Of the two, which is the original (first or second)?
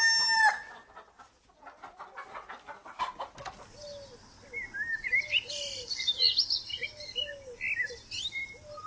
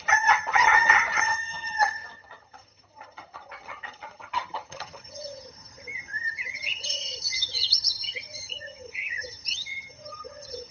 first